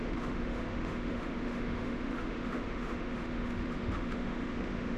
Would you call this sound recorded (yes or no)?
no